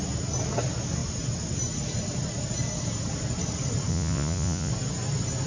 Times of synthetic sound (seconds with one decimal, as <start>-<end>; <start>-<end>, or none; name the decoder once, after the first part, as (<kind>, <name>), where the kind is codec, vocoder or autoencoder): 3.9-4.7 (vocoder, Vocos)

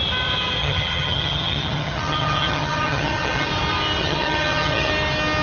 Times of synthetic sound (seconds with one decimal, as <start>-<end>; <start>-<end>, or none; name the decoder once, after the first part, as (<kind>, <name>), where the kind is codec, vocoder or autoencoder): 0.6-3.5 (vocoder, HiFi-GAN); 4.0-4.9